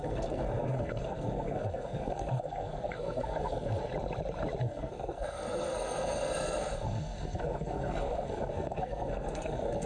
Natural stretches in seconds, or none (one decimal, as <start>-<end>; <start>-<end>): 3.9-4.6